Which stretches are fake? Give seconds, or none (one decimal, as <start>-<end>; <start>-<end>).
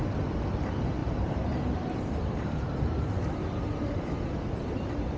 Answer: 1.0-4.1